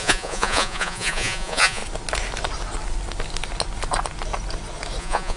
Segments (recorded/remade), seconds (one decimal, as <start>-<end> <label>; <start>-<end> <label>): 0.0-1.8 remade; 1.8-5.0 recorded; 5.0-5.4 remade